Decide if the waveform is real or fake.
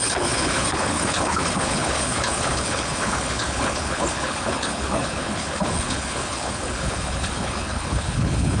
fake